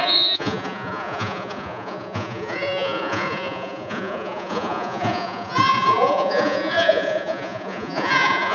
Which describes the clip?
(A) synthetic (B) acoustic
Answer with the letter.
A